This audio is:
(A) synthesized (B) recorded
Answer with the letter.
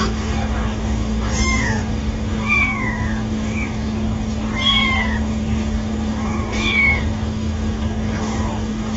A